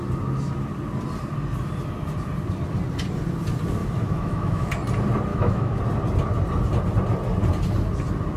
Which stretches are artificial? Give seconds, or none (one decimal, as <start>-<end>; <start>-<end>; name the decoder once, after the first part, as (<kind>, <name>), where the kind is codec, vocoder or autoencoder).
3.8-4.7 (autoencoder, DAC-VAE); 5.3-5.8